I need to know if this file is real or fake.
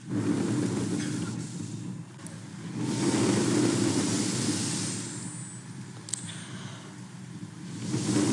real